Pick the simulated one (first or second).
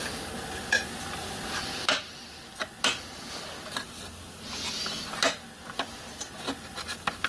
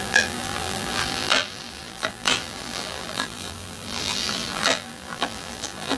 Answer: second